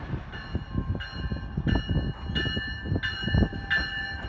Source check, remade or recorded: recorded